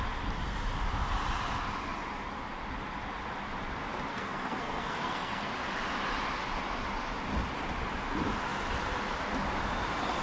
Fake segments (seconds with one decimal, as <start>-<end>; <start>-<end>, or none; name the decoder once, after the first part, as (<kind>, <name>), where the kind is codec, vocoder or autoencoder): 4.1-5.5 (codec, SNAC)